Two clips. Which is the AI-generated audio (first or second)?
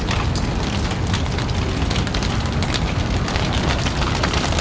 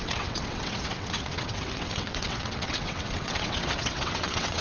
second